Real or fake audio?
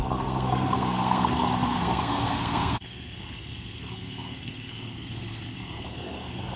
fake